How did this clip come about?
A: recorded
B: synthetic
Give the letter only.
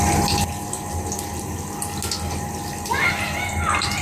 A